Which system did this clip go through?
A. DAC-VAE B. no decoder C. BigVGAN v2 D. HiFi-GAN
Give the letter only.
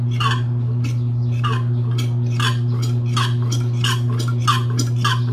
B